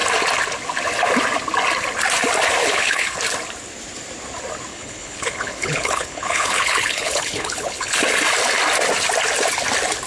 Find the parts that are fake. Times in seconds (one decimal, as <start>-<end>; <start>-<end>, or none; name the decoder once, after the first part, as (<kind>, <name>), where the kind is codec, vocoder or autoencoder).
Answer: 2.6-3.2 (codec, HILCodec); 4.7-8.0

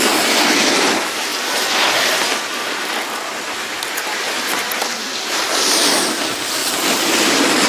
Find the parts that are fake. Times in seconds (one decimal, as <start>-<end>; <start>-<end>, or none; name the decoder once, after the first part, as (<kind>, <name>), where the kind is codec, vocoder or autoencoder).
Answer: none

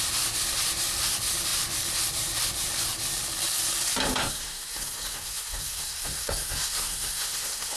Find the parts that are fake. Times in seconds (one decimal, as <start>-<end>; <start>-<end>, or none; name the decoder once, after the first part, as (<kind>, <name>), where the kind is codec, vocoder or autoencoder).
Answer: 4.2-7.8 (codec, SNAC)

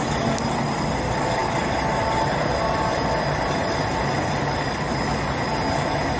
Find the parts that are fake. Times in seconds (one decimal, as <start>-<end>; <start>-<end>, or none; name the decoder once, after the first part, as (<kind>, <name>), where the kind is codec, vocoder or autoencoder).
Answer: none

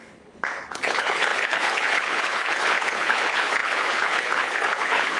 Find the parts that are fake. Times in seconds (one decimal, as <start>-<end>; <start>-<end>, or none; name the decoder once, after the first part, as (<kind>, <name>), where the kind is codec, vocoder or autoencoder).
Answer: 0.0-5.2 (codec, HILCodec)

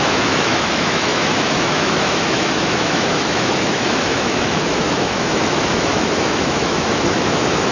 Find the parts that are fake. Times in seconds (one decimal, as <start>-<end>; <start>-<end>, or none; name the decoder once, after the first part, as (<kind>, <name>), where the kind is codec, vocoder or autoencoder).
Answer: 0.0-7.7 (autoencoder, DAC-VAE)

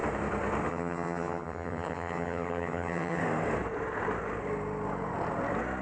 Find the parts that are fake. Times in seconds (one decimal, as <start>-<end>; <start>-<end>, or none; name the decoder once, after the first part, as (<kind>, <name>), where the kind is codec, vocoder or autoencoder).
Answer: 0.7-3.2 (vocoder, HiFi-GAN)